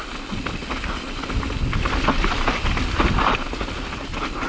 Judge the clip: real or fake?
real